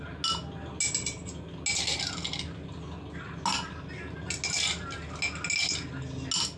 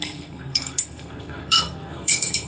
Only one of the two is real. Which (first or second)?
first